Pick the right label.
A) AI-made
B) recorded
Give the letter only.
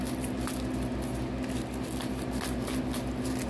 B